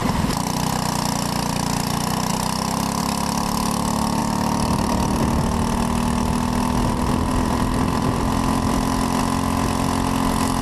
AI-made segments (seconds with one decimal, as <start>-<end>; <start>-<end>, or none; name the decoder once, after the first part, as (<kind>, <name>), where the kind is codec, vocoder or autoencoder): 0.0-0.7 (vocoder, BigVGAN v2); 4.2-5.2; 7.3-9.2